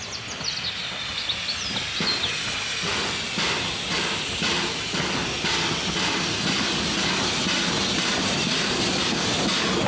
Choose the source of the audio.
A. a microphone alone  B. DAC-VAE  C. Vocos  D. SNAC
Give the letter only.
A